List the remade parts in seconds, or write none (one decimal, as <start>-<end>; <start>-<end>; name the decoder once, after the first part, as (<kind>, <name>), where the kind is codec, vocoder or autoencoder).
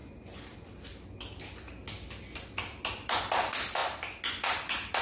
none